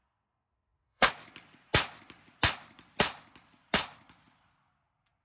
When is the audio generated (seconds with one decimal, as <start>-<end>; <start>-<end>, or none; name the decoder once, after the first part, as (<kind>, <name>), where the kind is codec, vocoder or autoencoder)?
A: 0.0-1.1 (codec, SNAC)